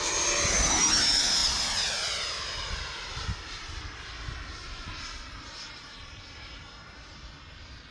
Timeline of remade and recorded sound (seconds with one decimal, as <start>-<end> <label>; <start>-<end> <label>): 0.0-7.9 recorded